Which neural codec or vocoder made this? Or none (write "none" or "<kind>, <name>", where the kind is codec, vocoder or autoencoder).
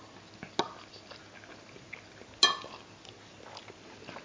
none